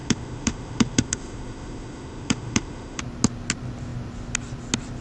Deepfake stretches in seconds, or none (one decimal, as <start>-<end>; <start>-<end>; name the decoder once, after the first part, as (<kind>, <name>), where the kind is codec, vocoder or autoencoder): 0.0-3.0 (autoencoder, DAC-VAE)